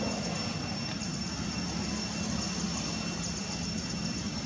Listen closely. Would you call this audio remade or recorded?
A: recorded